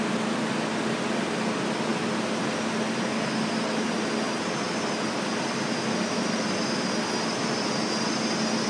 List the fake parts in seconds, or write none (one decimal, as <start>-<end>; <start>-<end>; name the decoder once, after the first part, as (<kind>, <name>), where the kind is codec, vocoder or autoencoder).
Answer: none